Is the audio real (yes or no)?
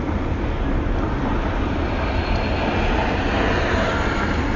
yes